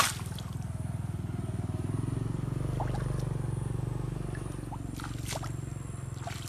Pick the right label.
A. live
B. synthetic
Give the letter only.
A